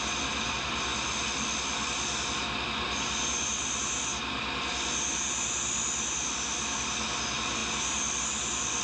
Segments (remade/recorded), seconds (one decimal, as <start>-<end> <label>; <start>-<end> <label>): 0.0-8.8 recorded